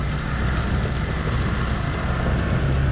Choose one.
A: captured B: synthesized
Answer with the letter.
A